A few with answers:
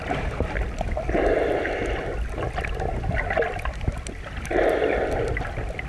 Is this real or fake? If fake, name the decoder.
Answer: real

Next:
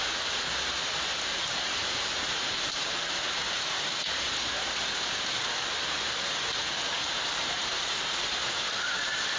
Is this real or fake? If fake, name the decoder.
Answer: fake, vocoder, BigVGAN v2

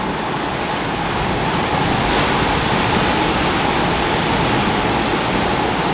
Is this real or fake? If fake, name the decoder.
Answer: fake, vocoder, BigVGAN v2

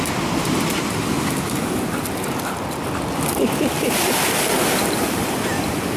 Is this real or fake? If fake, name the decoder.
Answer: real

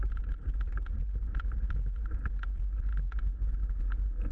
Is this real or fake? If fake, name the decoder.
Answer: real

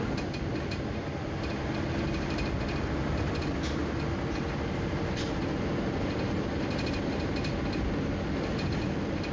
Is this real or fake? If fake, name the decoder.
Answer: real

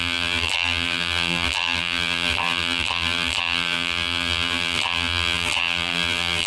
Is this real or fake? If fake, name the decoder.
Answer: fake, vocoder, BigVGAN v2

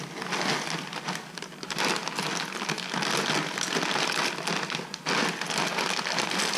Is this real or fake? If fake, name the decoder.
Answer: real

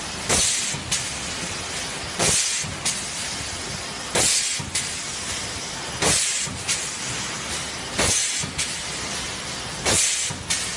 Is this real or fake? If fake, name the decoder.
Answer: real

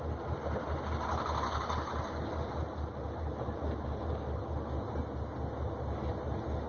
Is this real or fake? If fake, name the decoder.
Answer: real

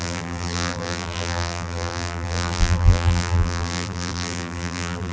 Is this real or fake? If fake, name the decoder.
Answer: fake, vocoder, BigVGAN v2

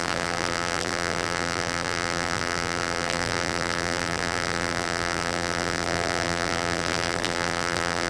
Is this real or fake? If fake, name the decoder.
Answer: fake, vocoder, BigVGAN v2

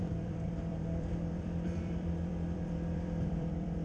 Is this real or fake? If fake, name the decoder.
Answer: fake, vocoder, BigVGAN v2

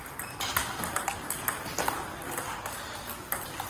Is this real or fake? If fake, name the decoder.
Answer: real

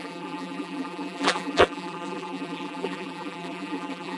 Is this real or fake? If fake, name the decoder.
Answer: fake, vocoder, BigVGAN v2